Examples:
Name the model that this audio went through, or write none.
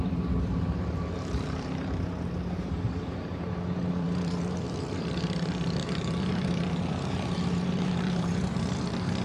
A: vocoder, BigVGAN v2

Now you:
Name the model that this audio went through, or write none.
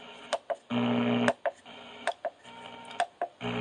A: none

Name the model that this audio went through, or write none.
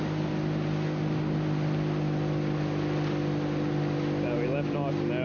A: none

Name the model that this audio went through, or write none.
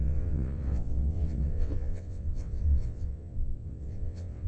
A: vocoder, WaveNeXt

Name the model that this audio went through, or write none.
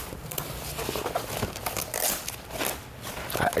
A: none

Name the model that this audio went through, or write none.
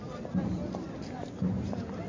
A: none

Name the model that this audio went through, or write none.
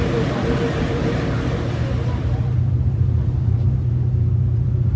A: vocoder, BigVGAN v2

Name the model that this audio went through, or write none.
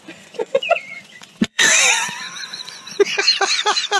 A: vocoder, Vocos